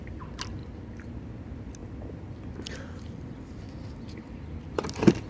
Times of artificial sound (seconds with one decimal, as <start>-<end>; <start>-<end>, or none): none